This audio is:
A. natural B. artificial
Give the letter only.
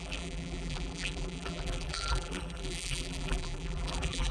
B